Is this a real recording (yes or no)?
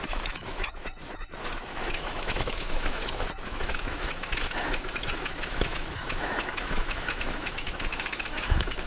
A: no